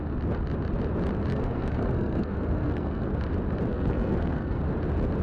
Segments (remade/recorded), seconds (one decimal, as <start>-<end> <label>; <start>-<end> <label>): 0.0-1.3 recorded; 1.3-3.1 remade; 3.1-3.7 recorded; 3.7-4.6 remade; 4.6-5.2 recorded

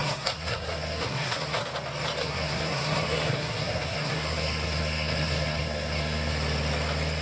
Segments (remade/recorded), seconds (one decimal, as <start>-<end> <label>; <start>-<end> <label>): 0.0-1.6 remade; 1.6-2.2 recorded; 2.2-6.3 remade; 6.3-7.2 recorded

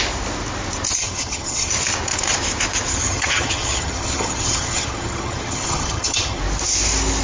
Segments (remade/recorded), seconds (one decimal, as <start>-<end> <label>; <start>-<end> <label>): 0.0-1.0 recorded; 1.0-1.7 remade; 1.7-2.9 recorded; 2.9-6.4 remade; 6.4-7.2 recorded

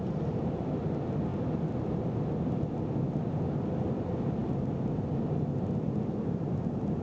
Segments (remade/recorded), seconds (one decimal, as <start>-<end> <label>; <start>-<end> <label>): 0.0-7.0 recorded

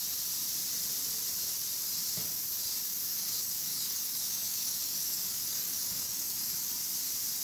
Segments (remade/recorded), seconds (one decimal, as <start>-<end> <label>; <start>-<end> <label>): 0.0-3.1 recorded; 3.1-6.7 remade; 6.7-7.4 recorded

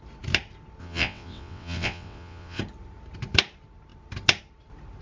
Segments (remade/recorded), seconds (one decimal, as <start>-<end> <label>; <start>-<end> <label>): 0.0-0.8 recorded; 0.8-2.6 remade; 2.6-5.0 recorded

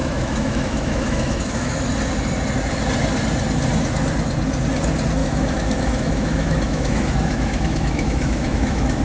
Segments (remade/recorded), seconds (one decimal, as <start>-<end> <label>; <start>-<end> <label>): 0.0-1.8 remade; 1.8-5.2 recorded; 5.2-9.0 remade

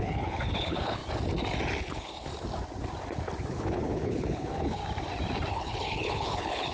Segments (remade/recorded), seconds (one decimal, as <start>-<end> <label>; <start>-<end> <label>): 0.0-1.0 remade; 1.0-1.8 recorded; 1.8-2.3 remade; 2.3-3.5 recorded; 3.5-4.8 remade; 4.8-5.5 recorded; 5.5-6.7 remade